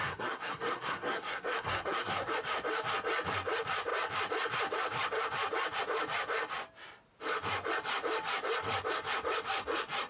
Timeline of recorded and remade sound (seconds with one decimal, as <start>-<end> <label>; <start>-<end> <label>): 0.0-2.3 remade; 2.3-10.1 recorded